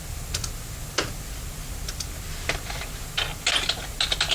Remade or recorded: recorded